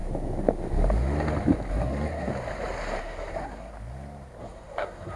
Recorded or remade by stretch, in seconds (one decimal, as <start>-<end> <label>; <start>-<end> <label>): 0.0-1.7 recorded; 1.7-2.3 remade; 2.3-3.0 recorded; 3.0-3.7 remade; 3.7-4.4 recorded; 4.4-5.2 remade